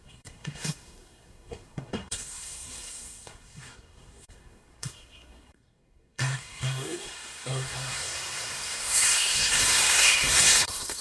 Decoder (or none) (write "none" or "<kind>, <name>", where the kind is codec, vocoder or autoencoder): codec, SNAC